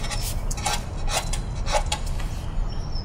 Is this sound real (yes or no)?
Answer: yes